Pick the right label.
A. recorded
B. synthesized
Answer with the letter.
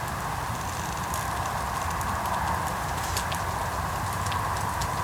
A